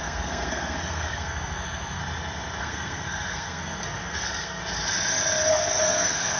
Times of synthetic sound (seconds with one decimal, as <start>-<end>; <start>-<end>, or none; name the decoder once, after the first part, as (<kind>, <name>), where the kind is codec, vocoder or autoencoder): 0.0-2.0 (codec, SNAC); 2.6-4.6; 5.5-6.4